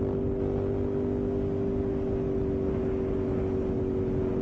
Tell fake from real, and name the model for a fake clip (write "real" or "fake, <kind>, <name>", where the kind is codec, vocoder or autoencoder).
real